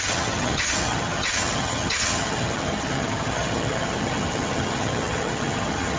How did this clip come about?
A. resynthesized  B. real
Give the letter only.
A